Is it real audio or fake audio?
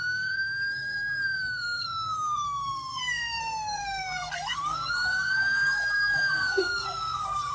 fake